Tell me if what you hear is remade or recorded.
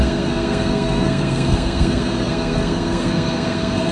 remade